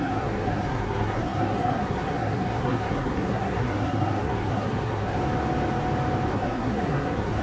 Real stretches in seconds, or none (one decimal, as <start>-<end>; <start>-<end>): 5.2-6.3